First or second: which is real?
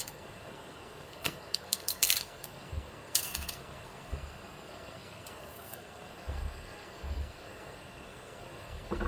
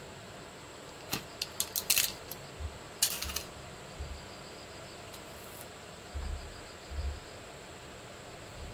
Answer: second